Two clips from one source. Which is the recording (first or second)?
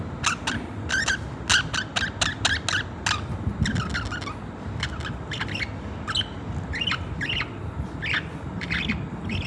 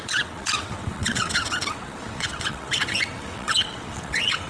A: first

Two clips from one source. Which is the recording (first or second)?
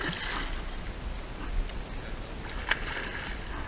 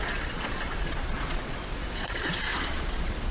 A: first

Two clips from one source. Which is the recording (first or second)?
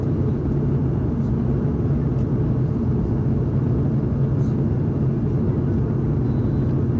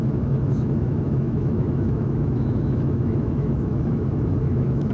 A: first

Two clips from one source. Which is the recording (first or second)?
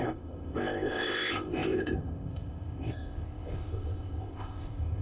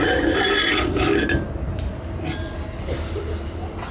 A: second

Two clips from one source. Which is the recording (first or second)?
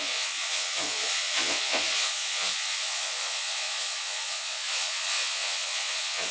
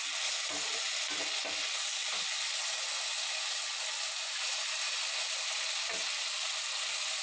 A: second